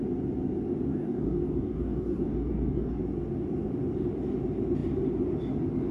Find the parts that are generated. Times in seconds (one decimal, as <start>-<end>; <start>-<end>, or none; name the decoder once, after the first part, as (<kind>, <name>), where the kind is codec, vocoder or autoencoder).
0.9-3.0 (codec, DAC)